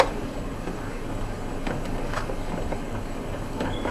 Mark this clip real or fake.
fake